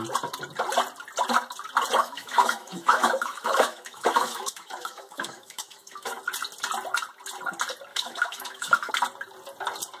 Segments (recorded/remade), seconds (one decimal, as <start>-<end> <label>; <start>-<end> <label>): 0.0-2.0 recorded; 2.0-6.2 remade; 6.2-7.9 recorded; 7.9-8.9 remade; 8.9-10.0 recorded